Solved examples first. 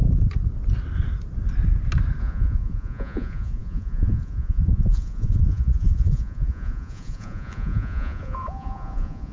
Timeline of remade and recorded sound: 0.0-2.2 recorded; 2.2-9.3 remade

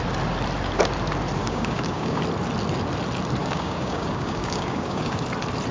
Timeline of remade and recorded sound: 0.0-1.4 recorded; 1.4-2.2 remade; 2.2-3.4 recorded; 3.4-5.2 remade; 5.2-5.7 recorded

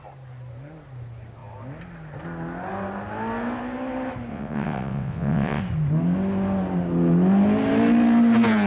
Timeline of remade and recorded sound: 0.0-4.3 recorded; 4.3-5.6 remade; 5.6-8.7 recorded